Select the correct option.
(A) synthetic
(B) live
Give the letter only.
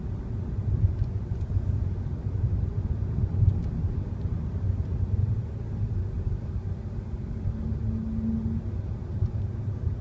B